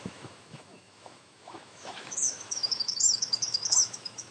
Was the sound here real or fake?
fake